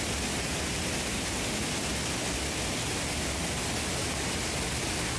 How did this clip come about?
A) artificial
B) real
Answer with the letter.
B